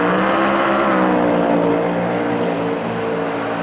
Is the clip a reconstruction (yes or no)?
no